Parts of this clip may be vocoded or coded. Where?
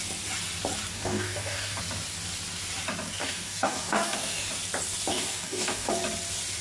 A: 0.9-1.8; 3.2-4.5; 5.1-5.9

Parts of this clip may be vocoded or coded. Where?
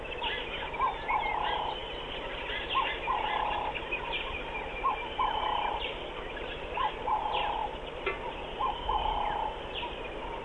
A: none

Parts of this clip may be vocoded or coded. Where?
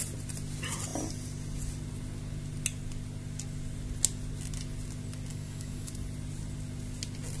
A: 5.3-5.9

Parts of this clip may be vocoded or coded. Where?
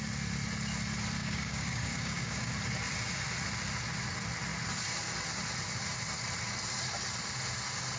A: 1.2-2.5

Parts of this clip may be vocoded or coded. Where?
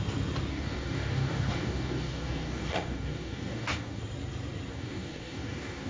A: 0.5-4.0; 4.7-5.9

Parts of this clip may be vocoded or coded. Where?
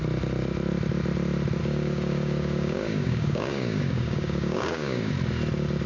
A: 1.6-5.1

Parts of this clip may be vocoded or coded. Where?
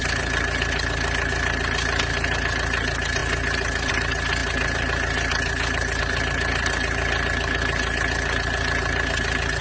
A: none